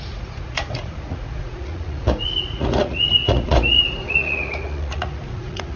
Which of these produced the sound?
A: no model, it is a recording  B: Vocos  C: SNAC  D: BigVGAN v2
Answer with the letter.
B